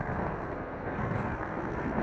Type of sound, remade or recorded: remade